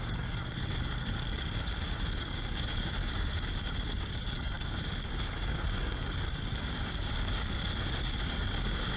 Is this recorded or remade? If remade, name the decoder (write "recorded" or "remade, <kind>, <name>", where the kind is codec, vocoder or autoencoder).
remade, codec, DAC